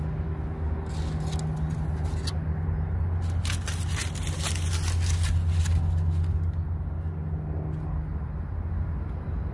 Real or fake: real